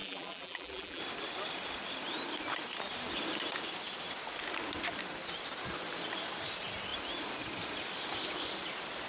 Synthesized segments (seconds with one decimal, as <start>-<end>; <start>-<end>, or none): 0.0-1.0